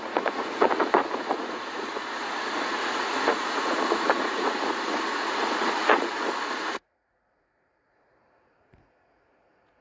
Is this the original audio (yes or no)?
no